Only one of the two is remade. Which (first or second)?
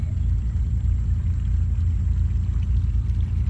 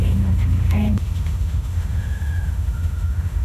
second